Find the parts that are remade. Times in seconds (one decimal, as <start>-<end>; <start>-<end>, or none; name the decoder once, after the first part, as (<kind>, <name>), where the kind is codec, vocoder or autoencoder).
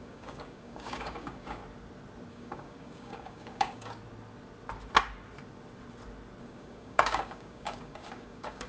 0.0-1.6 (codec, DAC); 2.3-4.0; 6.4-8.7